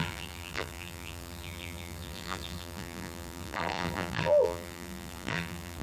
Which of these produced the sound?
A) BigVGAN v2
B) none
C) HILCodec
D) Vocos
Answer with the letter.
A